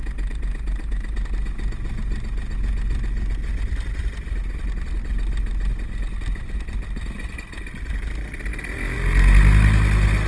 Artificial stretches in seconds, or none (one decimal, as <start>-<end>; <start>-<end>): none